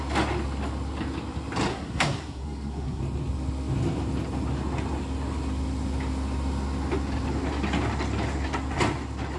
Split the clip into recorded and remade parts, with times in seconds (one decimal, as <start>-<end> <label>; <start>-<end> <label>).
0.0-1.7 recorded; 1.7-3.0 remade; 3.0-9.4 recorded